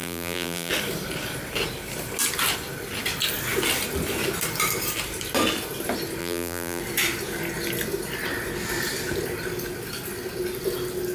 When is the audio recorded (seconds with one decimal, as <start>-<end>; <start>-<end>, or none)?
0.7-6.2; 6.8-11.1